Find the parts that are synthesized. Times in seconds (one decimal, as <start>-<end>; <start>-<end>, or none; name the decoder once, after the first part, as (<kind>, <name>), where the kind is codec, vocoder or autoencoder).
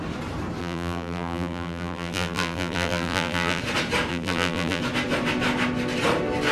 0.6-3.6 (vocoder, BigVGAN v2); 4.1-4.8